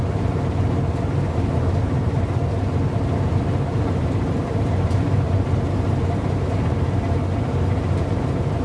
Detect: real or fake fake